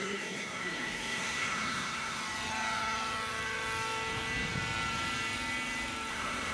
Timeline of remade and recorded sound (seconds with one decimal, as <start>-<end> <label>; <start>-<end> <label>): 0.0-2.2 remade; 2.2-6.1 recorded; 6.1-6.5 remade